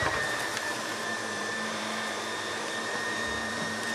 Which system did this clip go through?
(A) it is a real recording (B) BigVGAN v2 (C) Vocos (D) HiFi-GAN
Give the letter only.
B